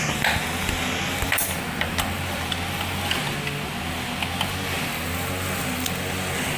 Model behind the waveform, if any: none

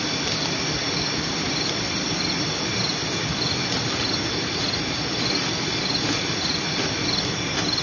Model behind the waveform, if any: none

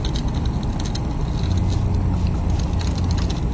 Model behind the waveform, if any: none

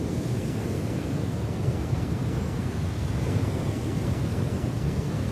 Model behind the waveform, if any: codec, SNAC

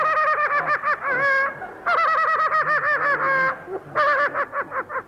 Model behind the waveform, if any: none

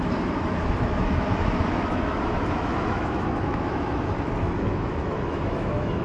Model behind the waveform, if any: autoencoder, DAC-VAE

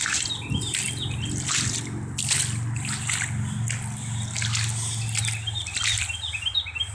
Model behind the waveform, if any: none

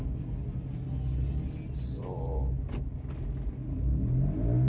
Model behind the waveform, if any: none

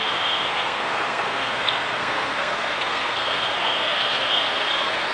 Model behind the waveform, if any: codec, SNAC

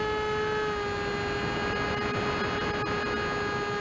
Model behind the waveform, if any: none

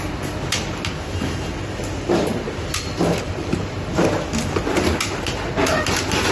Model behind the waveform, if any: none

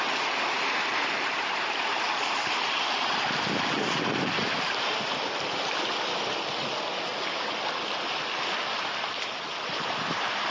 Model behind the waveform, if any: none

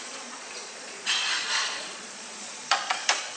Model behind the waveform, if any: vocoder, Vocos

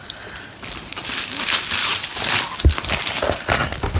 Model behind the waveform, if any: none